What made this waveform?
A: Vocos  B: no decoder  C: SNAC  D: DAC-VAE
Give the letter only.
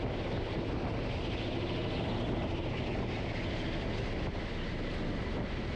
B